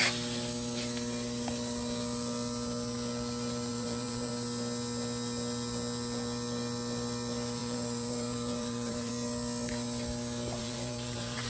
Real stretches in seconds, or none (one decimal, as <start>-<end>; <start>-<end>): 0.0-3.7; 4.3-7.6; 9.1-10.6